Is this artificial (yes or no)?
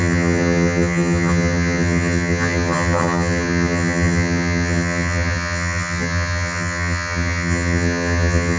yes